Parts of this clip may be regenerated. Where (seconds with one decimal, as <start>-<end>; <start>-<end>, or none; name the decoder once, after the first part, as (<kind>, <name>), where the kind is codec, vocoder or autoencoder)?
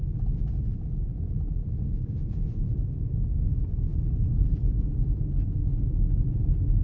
1.6-3.0 (vocoder, BigVGAN v2); 3.9-5.2